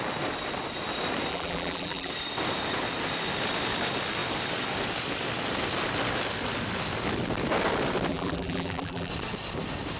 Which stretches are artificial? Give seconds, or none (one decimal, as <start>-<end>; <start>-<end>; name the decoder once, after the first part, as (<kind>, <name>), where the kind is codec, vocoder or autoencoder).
1.3-2.1 (vocoder, BigVGAN v2); 8.1-9.1